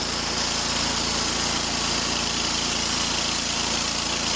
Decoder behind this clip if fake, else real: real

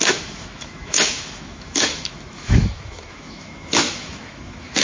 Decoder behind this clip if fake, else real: fake, autoencoder, DAC-VAE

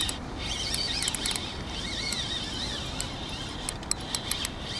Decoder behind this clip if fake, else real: real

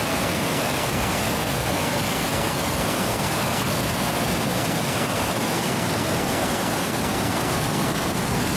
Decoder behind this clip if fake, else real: fake, codec, SNAC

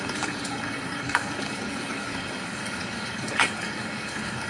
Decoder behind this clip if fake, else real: fake, codec, DAC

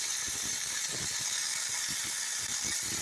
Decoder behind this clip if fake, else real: real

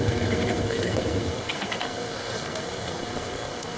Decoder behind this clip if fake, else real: fake, codec, SNAC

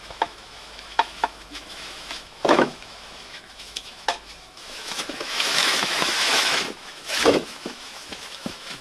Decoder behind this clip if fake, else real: fake, autoencoder, DAC-VAE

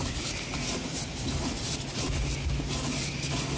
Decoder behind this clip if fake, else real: real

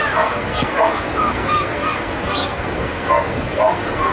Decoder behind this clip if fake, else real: fake, codec, SNAC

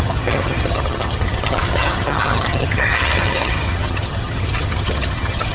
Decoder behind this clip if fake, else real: fake, vocoder, HiFi-GAN